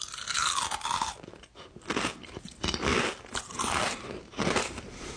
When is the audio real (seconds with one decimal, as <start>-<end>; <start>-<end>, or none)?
0.0-4.3